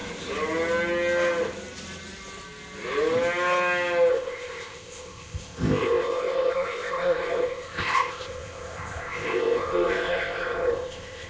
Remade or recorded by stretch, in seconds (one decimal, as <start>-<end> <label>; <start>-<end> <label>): 0.0-4.1 recorded; 4.1-11.3 remade